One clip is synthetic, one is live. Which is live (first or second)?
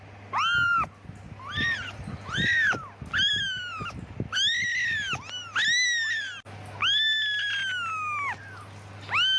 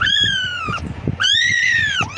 first